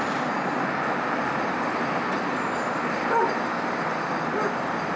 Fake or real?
real